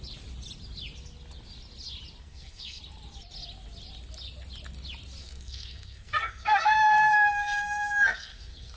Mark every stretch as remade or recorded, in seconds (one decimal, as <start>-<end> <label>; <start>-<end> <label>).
0.0-2.2 recorded; 2.2-2.8 remade; 2.8-5.2 recorded; 5.2-8.8 remade

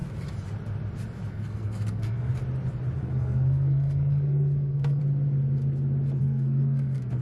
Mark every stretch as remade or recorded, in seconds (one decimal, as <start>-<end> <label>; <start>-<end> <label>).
0.0-1.3 recorded; 1.3-2.3 remade; 2.3-3.0 recorded; 3.0-5.0 remade; 5.0-6.2 recorded; 6.2-7.2 remade